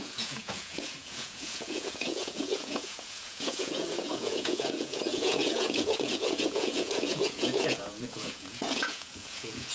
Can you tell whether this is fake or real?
fake